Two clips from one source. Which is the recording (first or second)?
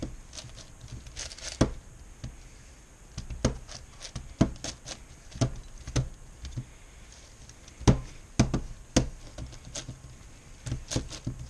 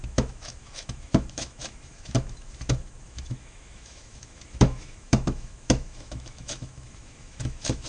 first